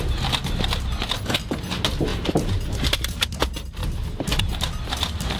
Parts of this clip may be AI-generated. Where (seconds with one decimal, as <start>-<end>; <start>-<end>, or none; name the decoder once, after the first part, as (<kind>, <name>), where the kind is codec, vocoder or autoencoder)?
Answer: 2.1-3.4 (vocoder, BigVGAN v2); 3.8-4.4